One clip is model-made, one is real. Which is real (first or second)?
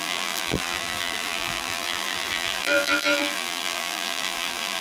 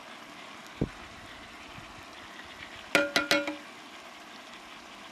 second